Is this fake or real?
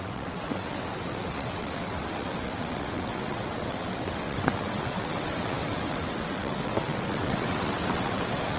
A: fake